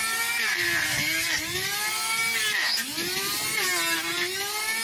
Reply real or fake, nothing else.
real